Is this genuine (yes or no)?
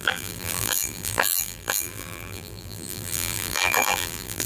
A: no